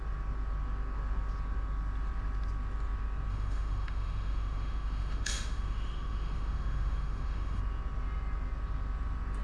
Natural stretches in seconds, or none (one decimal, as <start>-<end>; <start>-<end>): 0.0-3.3; 7.6-9.4

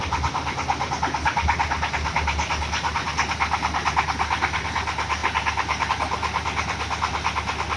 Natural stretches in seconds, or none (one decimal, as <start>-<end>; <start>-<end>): 0.0-7.8

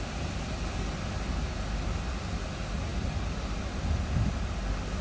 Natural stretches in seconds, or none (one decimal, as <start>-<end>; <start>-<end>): 0.0-5.0

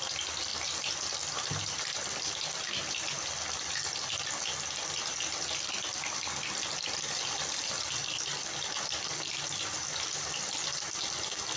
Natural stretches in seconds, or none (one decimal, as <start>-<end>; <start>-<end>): 0.0-11.6

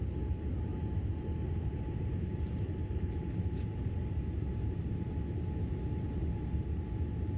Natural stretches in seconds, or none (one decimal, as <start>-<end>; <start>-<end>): 0.0-0.7; 3.2-7.4